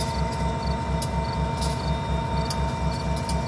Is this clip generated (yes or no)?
no